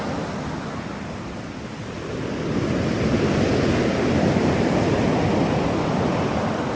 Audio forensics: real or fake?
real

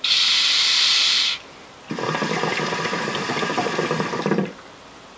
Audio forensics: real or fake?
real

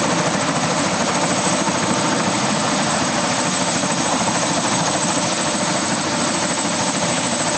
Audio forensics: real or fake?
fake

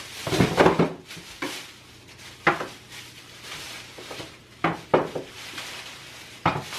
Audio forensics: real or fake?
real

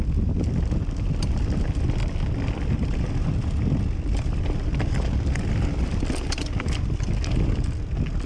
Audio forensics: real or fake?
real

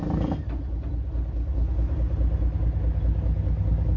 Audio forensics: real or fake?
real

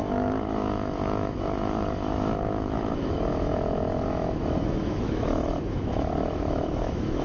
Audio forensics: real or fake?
fake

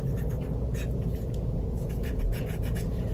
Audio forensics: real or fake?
fake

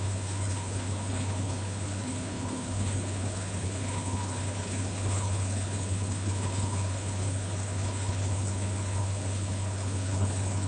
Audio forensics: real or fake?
fake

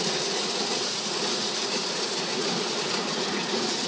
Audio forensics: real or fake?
fake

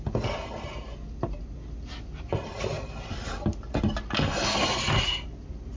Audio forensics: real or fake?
real